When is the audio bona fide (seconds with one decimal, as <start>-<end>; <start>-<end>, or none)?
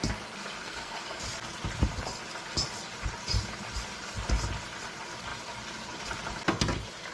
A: 0.0-0.6; 1.2-7.1